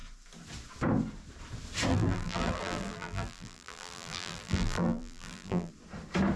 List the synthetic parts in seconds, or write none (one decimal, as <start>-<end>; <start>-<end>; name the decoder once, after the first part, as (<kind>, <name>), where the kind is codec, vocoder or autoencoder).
1.9-5.7 (vocoder, BigVGAN v2)